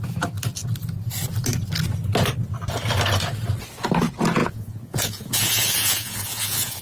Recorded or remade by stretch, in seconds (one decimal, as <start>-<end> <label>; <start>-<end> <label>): 0.0-4.4 recorded; 4.4-6.8 remade